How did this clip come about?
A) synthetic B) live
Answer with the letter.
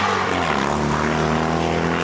B